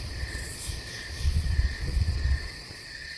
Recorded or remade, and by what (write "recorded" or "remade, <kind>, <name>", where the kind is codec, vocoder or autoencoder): remade, vocoder, Vocos